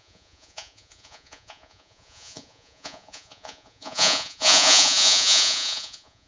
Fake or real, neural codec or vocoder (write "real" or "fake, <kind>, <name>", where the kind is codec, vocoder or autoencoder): fake, vocoder, Vocos